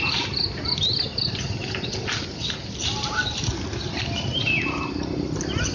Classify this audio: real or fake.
real